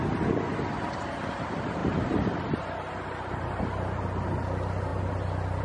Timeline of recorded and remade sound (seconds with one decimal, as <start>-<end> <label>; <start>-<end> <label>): 0.0-5.6 recorded